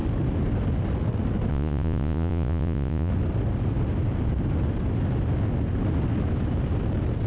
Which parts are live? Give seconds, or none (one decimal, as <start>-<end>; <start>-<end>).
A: 0.0-1.5; 3.1-7.3